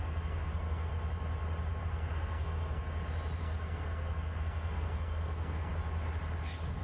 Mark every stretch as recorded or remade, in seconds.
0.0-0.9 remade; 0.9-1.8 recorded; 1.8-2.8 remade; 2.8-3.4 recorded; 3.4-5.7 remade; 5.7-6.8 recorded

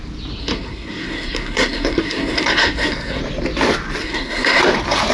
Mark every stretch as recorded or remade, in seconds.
0.0-0.4 recorded; 0.4-3.2 remade; 3.2-4.0 recorded; 4.0-4.6 remade; 4.6-5.1 recorded

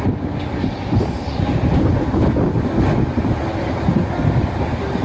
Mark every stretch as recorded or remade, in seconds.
0.0-5.0 recorded

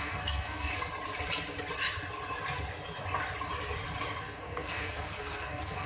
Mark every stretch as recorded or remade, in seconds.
0.0-0.7 remade; 0.7-4.2 recorded; 4.2-5.9 remade

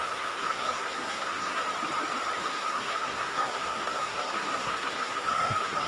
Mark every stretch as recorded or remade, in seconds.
0.0-1.6 remade; 1.6-2.4 recorded; 2.4-5.9 remade

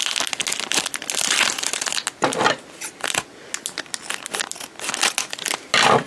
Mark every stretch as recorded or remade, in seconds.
0.0-6.1 recorded